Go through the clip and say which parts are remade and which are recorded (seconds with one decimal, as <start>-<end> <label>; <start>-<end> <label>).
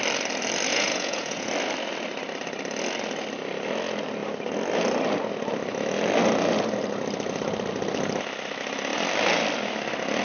0.0-0.7 recorded; 0.7-1.5 remade; 1.5-10.2 recorded